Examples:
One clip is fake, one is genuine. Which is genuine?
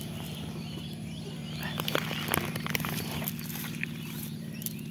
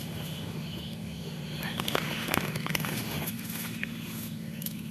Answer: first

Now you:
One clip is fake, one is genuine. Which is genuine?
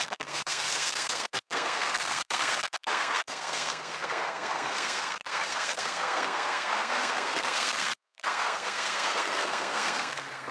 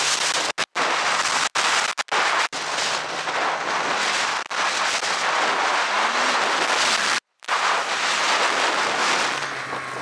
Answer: second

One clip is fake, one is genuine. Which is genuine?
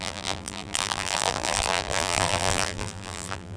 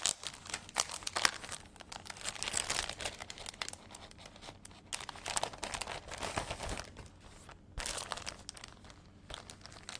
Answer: second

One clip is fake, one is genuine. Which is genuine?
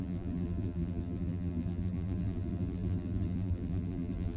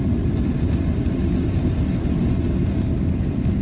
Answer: second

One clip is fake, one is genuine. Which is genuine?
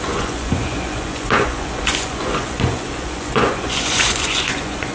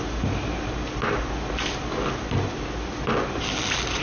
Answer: second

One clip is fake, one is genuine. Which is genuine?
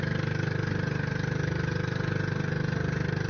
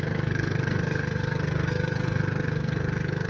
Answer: first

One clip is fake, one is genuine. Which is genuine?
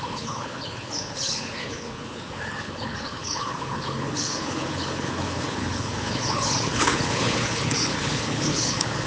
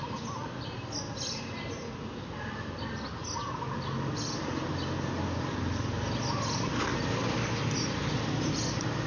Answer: second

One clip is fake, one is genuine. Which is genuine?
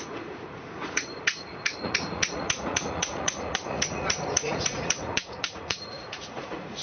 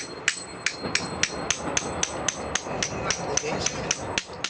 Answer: second